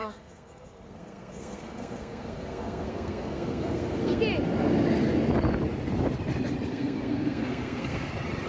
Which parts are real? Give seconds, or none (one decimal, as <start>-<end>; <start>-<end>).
4.2-6.7; 8.1-8.5

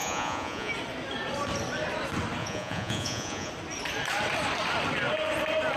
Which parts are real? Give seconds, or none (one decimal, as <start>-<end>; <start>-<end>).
0.7-2.4; 3.5-5.8

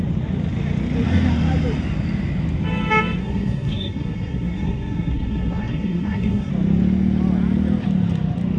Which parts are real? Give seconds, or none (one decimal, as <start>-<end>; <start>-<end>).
0.0-3.2; 6.5-8.6

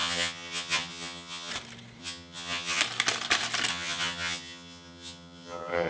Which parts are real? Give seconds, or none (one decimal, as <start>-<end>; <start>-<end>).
1.5-2.0; 2.8-3.7

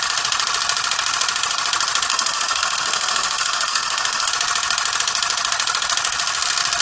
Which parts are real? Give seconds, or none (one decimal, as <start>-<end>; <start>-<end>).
0.0-2.1; 4.3-6.8

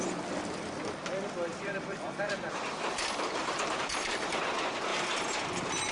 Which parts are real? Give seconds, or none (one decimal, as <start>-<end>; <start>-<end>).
0.0-1.5; 2.3-3.4; 4.4-4.9